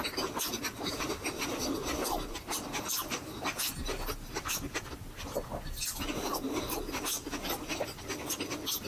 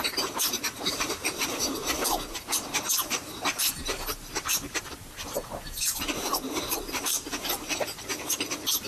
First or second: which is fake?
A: second